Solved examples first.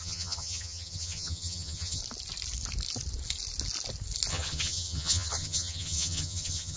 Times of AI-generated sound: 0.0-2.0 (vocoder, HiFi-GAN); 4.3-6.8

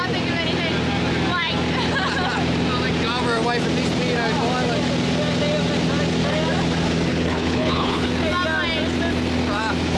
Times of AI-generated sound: 7.1-8.1 (codec, HILCodec)